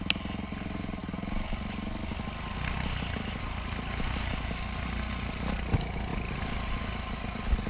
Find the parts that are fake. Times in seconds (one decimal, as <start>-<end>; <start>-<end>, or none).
none

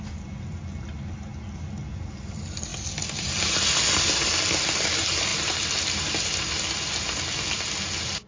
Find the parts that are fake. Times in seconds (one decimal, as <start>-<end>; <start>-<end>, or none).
none

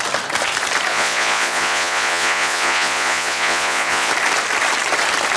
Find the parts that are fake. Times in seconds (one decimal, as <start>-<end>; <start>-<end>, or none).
0.9-4.1